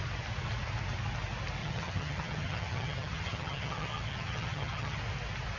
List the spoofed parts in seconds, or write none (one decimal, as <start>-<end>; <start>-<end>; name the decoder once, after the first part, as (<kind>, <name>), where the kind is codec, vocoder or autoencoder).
1.6-5.0 (vocoder, HiFi-GAN)